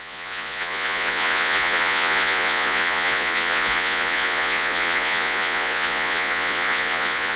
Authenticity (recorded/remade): remade